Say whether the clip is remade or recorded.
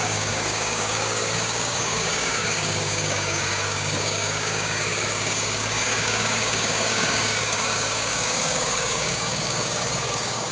remade